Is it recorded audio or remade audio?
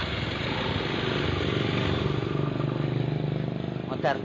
recorded